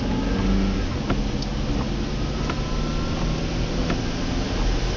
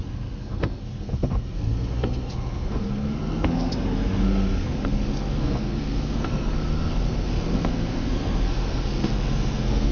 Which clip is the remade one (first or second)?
second